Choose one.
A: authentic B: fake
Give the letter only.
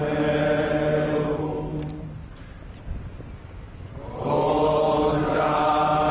A